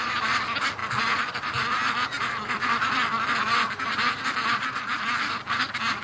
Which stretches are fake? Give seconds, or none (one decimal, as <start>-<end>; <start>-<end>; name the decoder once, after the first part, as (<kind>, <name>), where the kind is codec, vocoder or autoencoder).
none